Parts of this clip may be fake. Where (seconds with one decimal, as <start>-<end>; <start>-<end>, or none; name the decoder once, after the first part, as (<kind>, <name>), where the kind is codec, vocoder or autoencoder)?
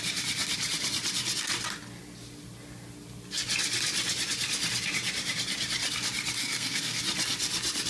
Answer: 6.4-7.0 (codec, SNAC)